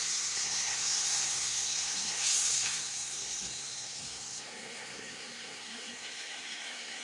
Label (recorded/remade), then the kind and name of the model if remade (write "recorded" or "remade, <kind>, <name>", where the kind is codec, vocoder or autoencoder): remade, codec, SNAC